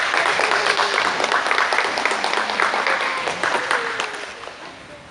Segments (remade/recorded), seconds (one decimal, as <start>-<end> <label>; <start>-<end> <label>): 0.0-5.1 recorded